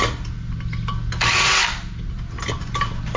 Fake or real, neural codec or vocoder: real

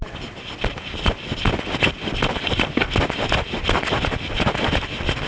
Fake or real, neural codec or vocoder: real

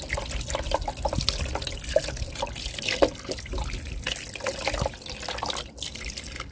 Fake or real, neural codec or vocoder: real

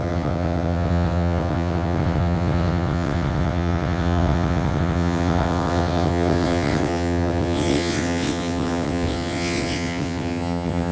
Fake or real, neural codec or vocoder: fake, vocoder, WaveNeXt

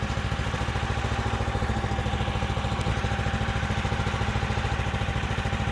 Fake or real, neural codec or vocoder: real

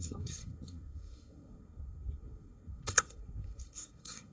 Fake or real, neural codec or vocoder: fake, codec, SNAC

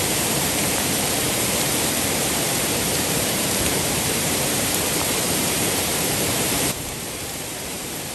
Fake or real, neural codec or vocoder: fake, vocoder, BigVGAN v2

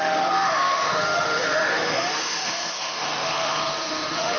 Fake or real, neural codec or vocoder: fake, autoencoder, DAC-VAE